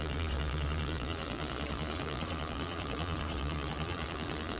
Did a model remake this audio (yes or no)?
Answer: yes